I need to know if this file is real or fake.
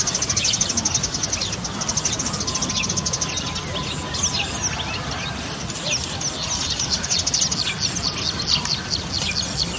real